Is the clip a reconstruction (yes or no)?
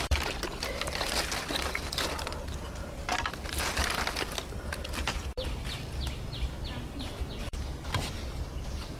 no